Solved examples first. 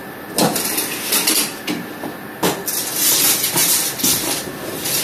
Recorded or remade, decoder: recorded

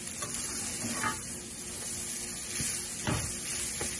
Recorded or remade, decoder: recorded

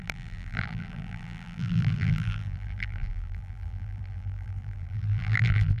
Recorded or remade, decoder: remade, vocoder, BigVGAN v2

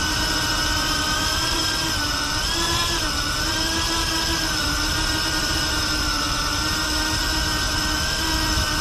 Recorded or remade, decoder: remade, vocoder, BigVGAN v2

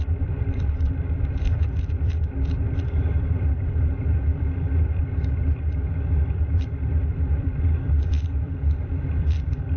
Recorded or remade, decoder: remade, vocoder, BigVGAN v2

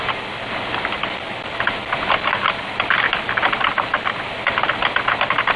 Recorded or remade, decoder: remade, vocoder, BigVGAN v2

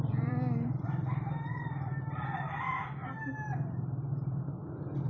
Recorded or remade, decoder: remade, vocoder, BigVGAN v2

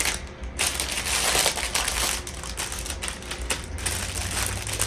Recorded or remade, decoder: recorded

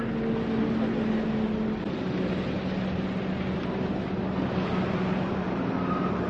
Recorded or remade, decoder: recorded